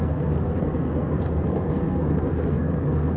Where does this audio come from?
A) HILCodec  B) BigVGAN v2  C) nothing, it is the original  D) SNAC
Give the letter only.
D